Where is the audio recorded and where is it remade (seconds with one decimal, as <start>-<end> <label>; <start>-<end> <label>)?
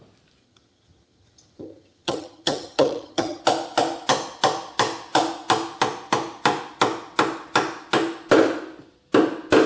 0.0-0.4 recorded; 0.4-3.4 remade; 3.4-9.7 recorded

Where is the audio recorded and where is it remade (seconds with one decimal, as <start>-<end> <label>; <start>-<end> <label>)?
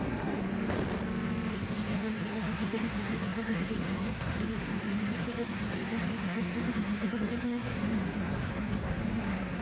0.0-0.4 remade; 0.4-1.5 recorded; 1.5-9.6 remade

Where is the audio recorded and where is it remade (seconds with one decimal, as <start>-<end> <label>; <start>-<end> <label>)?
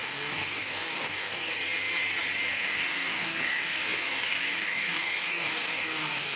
0.0-1.5 remade; 1.5-2.5 recorded; 2.5-6.4 remade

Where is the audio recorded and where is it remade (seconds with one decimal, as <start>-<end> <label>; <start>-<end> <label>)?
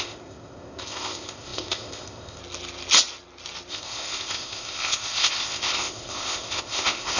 0.0-2.4 remade; 2.4-3.7 recorded; 3.7-7.2 remade